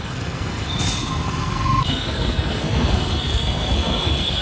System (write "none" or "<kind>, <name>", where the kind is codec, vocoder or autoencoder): codec, SNAC